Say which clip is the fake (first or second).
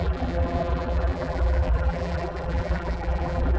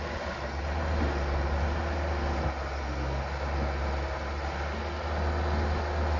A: first